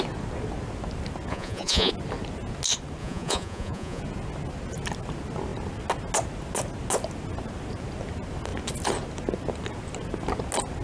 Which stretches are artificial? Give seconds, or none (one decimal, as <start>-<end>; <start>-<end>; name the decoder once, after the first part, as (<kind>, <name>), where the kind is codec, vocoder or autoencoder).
1.3-1.9 (vocoder, Vocos); 3.0-4.0